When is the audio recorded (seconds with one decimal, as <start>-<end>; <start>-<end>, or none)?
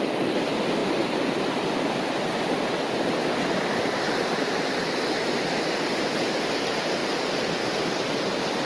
0.0-3.2; 5.2-7.0; 7.8-8.7